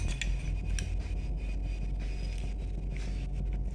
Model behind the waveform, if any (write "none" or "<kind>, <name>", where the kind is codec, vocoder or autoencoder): none